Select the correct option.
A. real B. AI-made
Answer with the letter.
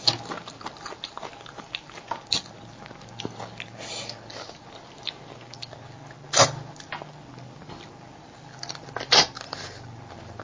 A